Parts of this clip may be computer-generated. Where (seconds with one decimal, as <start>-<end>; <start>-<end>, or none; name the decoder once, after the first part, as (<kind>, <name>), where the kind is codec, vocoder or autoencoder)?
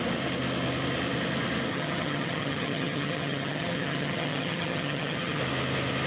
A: 1.7-5.4 (vocoder, HiFi-GAN)